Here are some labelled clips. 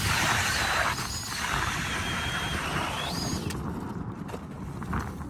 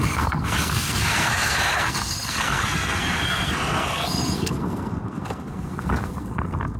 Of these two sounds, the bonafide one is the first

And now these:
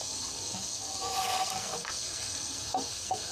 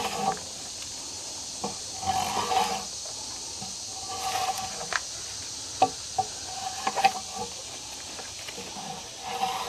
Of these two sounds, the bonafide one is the second